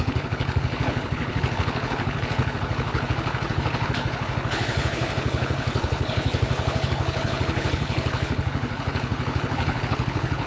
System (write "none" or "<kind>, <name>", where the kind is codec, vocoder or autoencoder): codec, HILCodec